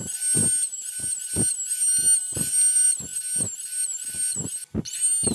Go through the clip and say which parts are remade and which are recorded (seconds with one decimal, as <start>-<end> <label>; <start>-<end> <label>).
0.0-5.3 recorded